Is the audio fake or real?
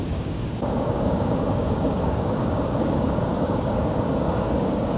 fake